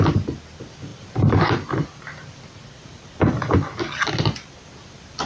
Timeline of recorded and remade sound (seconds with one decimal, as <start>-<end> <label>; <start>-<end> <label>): 0.0-0.9 recorded; 0.9-2.4 remade; 2.4-5.3 recorded